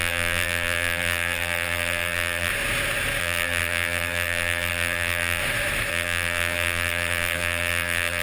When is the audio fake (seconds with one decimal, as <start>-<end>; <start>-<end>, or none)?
0.0-2.5; 3.2-5.4; 5.9-8.2